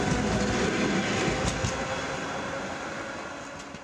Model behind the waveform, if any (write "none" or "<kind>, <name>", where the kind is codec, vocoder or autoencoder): none